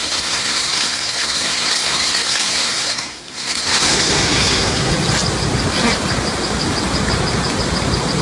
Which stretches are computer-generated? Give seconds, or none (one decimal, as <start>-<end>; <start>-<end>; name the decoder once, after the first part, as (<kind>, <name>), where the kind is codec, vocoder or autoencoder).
0.0-4.9 (codec, SNAC)